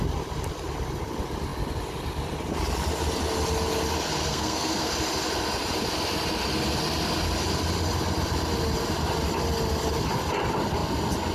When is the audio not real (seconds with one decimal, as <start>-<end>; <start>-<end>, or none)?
4.3-4.9